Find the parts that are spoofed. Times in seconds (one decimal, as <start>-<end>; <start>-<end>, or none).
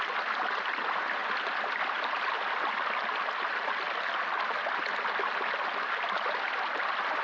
none